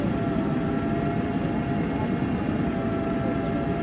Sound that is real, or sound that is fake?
real